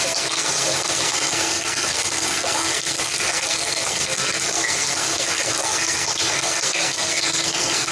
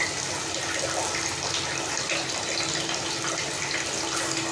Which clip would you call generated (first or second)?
first